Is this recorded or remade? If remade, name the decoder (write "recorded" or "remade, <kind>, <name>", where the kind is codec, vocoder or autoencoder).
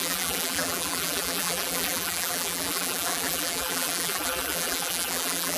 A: remade, vocoder, BigVGAN v2